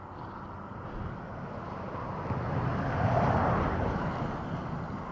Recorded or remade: recorded